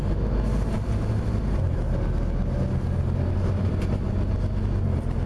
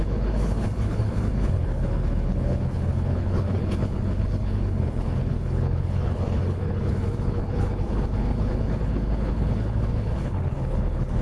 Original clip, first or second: first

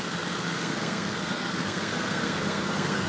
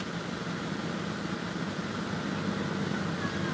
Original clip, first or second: second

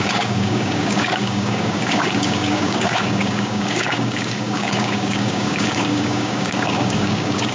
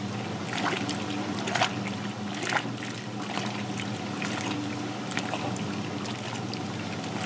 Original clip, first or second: second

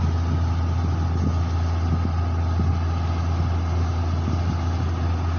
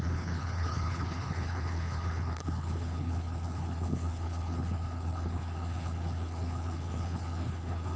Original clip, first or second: first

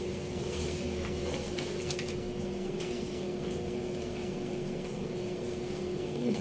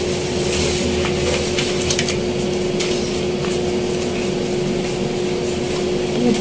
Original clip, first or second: second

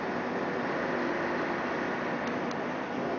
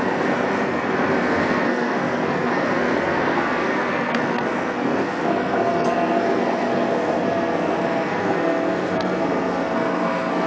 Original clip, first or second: first